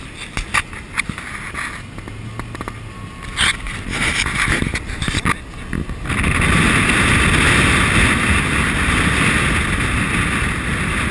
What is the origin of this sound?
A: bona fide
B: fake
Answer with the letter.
A